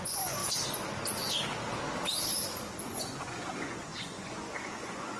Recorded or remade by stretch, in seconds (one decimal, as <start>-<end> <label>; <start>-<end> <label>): 0.0-0.4 remade; 0.4-2.9 recorded; 2.9-5.2 remade